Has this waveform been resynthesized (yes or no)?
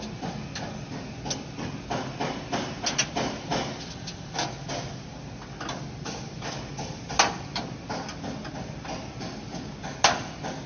no